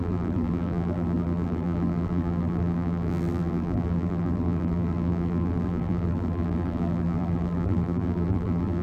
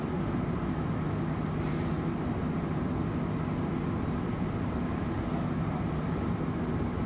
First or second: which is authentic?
second